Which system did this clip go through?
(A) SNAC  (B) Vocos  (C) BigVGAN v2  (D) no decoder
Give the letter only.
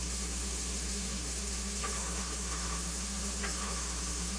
A